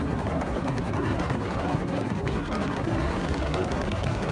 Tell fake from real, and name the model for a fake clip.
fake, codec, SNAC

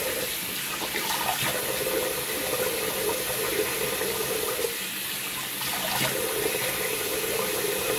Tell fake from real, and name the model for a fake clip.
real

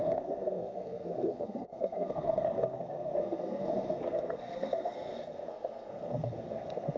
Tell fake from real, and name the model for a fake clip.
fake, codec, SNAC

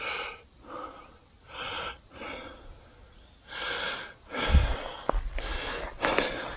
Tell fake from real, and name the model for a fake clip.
real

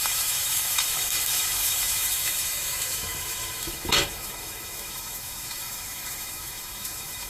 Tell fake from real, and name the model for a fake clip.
fake, autoencoder, DAC-VAE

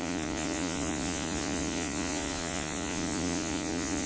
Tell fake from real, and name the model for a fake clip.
fake, vocoder, Vocos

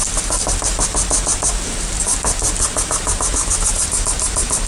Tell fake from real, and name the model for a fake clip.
real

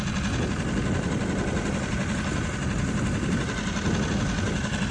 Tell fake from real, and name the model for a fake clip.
real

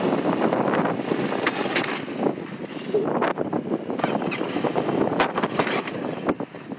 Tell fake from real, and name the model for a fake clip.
real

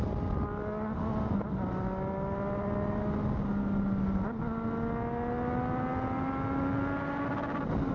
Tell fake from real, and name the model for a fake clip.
real